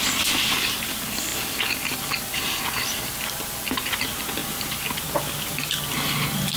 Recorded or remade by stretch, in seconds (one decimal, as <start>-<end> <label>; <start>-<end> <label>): 0.0-6.6 recorded

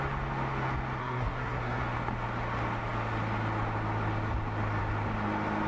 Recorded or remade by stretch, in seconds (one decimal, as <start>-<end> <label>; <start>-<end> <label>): 0.0-1.0 recorded; 1.0-1.8 remade; 1.8-5.7 recorded

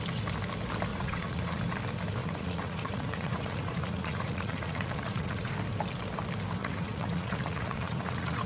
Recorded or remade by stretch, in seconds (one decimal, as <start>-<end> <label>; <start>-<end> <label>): 0.0-0.9 recorded; 0.9-1.6 remade; 1.6-2.2 recorded; 2.2-5.5 remade; 5.5-6.6 recorded; 6.6-8.5 remade

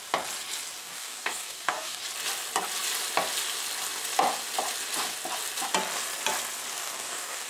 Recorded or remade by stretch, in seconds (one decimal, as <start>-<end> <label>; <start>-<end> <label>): 0.0-0.8 recorded; 0.8-2.0 remade; 2.0-6.7 recorded; 6.7-7.5 remade

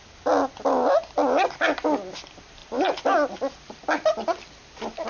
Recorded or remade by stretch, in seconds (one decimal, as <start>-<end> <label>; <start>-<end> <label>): 0.0-2.6 recorded; 2.6-3.4 remade; 3.4-5.1 recorded

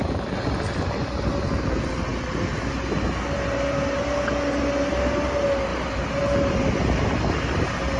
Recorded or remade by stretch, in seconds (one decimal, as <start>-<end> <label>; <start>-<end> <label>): 0.0-8.0 recorded

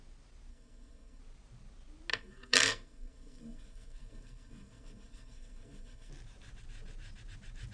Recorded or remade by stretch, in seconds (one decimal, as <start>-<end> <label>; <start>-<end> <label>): 0.0-0.5 recorded; 0.5-1.2 remade; 1.2-2.1 recorded; 2.1-6.1 remade; 6.1-7.7 recorded